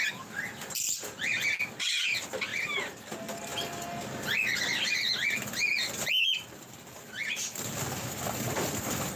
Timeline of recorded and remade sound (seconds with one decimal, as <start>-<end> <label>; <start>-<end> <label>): 0.0-2.5 recorded; 2.5-3.1 remade; 3.1-9.2 recorded